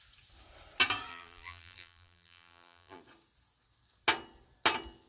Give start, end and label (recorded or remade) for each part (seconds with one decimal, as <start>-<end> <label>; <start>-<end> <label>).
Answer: 0.0-1.1 recorded; 1.1-3.0 remade; 3.0-5.1 recorded